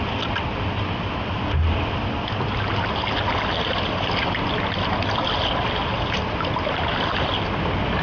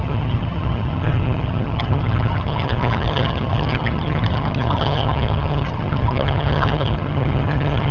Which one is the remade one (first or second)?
second